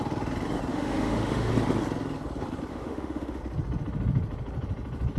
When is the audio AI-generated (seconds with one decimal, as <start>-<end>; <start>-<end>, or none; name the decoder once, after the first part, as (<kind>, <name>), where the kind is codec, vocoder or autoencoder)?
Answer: 0.7-1.5 (autoencoder, DAC-VAE); 2.7-3.4